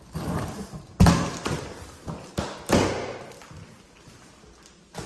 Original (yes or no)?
yes